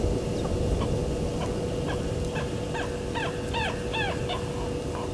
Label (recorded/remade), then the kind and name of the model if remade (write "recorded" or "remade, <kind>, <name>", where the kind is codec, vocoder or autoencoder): recorded